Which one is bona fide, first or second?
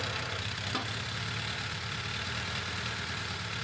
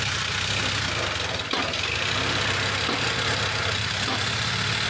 second